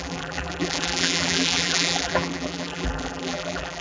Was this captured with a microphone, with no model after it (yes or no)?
no